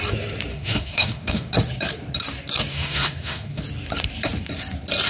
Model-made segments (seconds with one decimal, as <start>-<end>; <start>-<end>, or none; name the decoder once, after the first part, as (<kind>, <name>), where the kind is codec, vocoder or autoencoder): 0.5-1.5 (autoencoder, DAC-VAE); 2.7-3.6